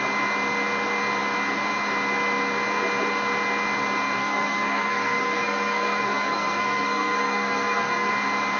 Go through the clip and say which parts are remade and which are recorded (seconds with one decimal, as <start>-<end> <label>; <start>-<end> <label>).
0.0-4.2 recorded; 4.2-8.1 remade; 8.1-8.6 recorded